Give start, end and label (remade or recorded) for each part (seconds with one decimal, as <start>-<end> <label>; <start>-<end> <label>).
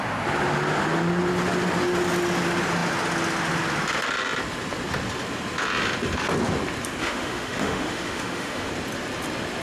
0.0-7.0 recorded; 7.0-8.7 remade; 8.7-9.6 recorded